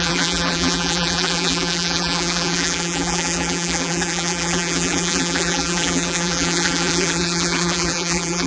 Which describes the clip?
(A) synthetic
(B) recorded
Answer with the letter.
A